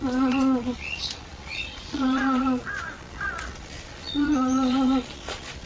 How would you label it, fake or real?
fake